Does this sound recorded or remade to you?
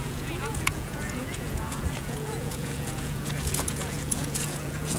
remade